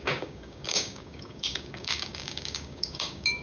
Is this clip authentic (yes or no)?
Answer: no